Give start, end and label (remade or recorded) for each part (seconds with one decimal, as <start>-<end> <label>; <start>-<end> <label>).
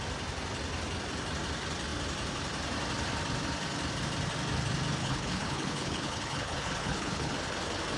0.0-5.0 recorded; 5.0-7.3 remade; 7.3-8.0 recorded